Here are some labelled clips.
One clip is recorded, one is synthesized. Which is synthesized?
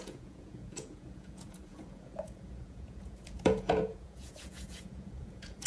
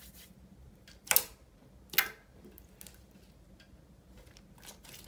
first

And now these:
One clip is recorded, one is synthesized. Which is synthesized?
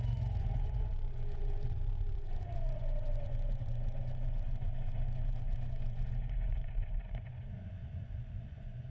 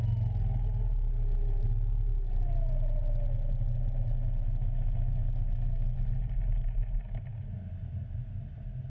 first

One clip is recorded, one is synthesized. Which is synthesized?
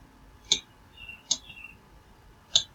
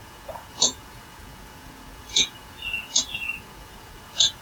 second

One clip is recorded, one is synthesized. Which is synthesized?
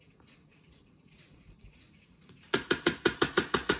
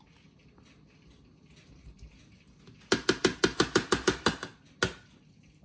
first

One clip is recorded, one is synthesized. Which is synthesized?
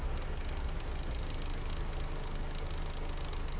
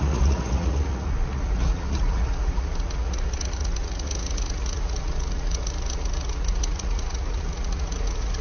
second